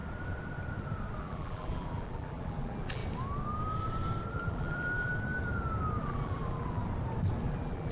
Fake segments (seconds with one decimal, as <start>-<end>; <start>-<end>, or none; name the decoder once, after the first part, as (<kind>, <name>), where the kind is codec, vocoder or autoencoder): 1.2-3.0 (vocoder, BigVGAN v2); 4.3-5.1; 6.0-6.8; 7.4-7.9